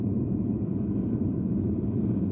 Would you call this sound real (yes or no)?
yes